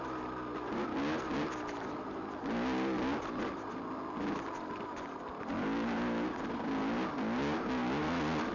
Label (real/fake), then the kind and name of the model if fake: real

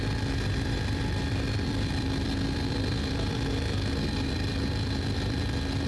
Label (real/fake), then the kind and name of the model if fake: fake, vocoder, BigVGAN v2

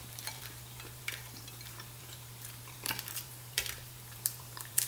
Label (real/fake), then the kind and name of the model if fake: fake, vocoder, BigVGAN v2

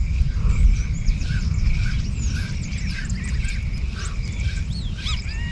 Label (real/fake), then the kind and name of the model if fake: real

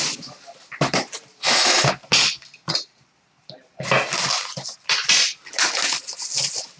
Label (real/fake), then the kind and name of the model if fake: real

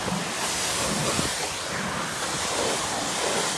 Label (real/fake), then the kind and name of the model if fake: real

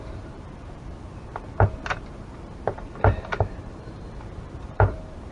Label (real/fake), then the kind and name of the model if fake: fake, vocoder, BigVGAN v2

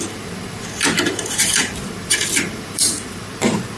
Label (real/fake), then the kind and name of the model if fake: fake, vocoder, BigVGAN v2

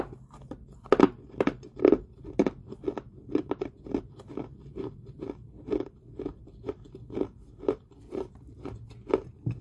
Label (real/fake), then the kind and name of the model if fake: real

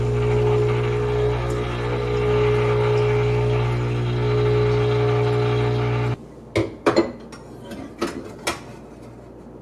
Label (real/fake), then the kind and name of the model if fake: real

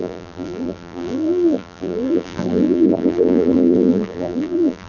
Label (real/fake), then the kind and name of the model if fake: fake, vocoder, BigVGAN v2